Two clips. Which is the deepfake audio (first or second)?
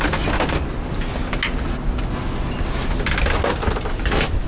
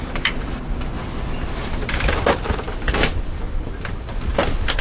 second